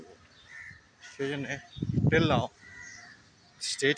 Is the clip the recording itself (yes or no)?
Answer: yes